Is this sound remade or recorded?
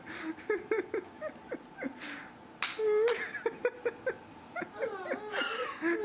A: recorded